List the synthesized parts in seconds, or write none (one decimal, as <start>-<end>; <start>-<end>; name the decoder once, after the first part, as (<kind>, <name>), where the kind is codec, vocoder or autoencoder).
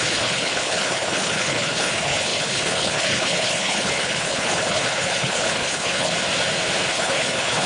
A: 0.0-6.1 (codec, HILCodec); 6.9-7.7